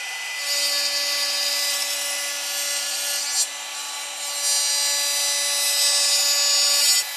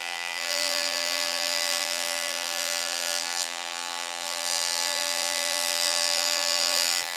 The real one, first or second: first